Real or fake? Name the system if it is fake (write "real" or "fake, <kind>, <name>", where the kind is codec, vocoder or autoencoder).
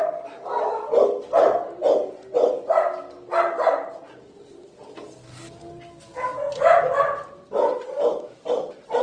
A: real